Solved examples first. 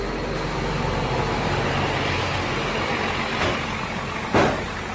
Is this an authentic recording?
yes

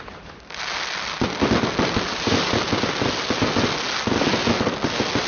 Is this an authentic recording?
yes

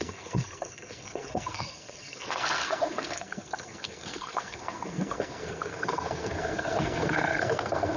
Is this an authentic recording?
no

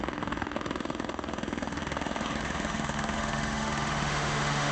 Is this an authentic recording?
no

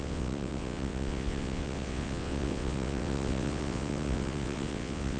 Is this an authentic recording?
no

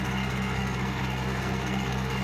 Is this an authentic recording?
no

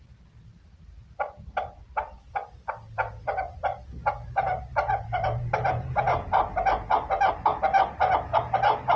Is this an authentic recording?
yes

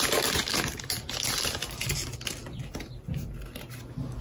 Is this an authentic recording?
yes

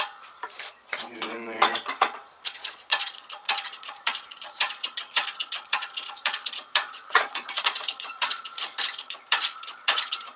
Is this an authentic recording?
no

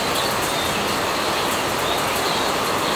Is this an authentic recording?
yes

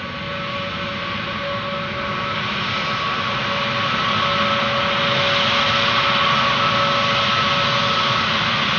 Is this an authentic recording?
yes